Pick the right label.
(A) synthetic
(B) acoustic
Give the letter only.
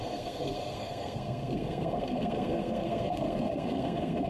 A